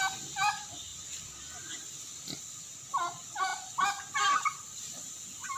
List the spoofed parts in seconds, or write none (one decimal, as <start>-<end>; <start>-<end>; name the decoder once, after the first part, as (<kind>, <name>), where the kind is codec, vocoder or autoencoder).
none